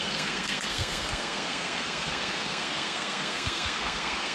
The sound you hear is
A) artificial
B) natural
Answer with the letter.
A